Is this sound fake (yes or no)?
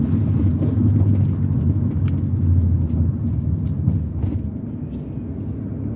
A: no